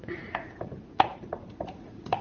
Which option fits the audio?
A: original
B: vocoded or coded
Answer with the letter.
B